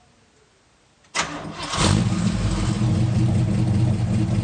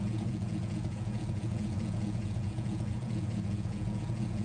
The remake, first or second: second